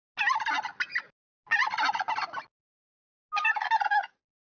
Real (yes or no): yes